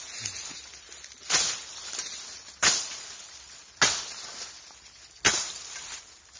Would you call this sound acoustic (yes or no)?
yes